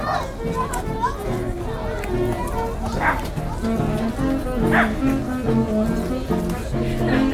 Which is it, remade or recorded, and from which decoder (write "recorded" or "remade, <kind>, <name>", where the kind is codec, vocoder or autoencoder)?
recorded